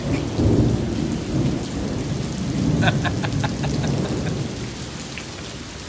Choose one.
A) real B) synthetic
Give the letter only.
A